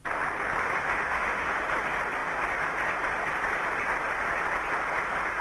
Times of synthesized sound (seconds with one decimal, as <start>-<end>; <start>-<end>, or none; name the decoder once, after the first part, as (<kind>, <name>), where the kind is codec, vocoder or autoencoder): 0.6-1.6 (autoencoder, DAC-VAE)